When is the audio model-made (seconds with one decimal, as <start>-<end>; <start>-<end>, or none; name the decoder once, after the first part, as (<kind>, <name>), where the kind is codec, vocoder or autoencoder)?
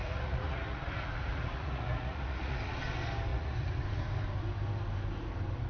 0.0-2.8 (vocoder, Vocos); 3.3-4.0